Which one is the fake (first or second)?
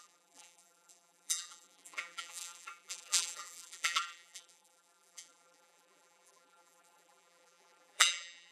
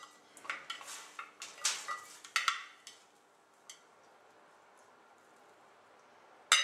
first